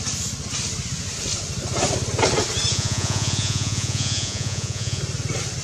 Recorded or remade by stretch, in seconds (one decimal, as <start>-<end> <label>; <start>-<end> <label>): 0.0-2.7 recorded; 2.7-5.0 remade; 5.0-5.6 recorded